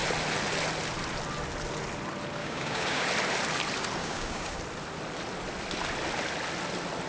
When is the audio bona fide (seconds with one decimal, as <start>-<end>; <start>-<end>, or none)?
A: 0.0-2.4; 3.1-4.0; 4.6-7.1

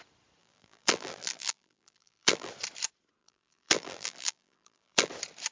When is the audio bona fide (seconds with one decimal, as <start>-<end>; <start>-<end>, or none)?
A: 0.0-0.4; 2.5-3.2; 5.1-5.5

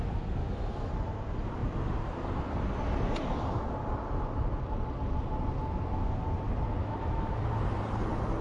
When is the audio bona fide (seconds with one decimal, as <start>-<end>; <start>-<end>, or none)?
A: 0.0-0.4; 0.9-6.8; 7.5-8.4

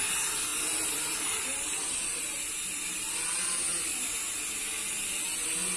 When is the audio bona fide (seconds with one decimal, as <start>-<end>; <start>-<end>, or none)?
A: 0.0-0.5; 3.1-3.7; 4.2-5.8

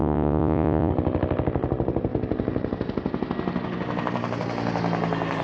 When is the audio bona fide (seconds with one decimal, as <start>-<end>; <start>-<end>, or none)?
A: 0.9-5.4

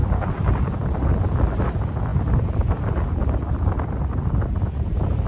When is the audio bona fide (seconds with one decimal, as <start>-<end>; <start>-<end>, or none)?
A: 1.1-5.3

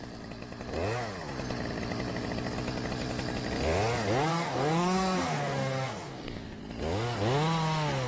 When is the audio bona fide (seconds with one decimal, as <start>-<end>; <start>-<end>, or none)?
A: 0.0-4.3; 6.6-8.1